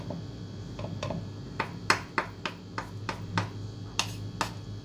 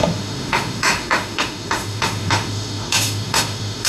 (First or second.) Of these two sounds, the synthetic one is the second